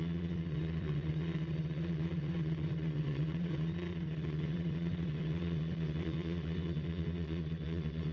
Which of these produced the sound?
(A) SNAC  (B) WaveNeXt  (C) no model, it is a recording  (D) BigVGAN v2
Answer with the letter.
B